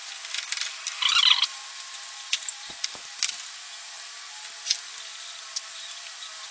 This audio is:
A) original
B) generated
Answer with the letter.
A